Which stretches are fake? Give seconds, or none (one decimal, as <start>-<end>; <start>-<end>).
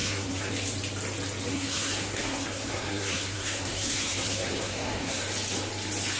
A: 0.0-0.5; 1.5-5.2